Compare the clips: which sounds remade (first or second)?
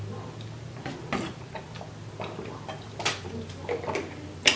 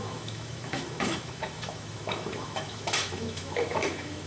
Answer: second